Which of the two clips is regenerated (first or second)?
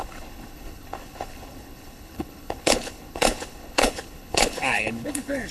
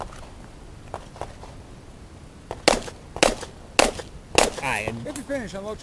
first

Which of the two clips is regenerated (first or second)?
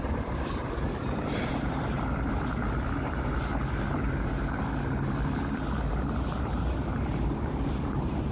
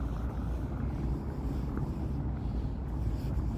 first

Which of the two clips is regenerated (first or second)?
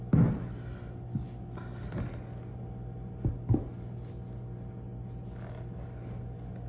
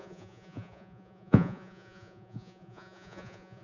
second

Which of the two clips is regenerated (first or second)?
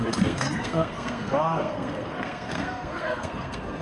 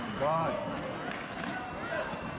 first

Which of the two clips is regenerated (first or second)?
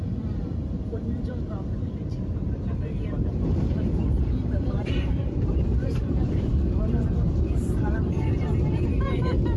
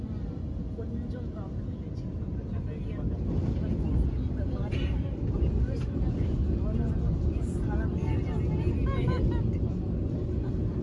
first